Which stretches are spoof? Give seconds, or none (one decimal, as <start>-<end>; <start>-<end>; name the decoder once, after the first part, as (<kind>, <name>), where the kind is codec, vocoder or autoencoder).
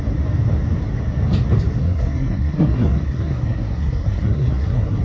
1.8-5.0 (codec, SNAC)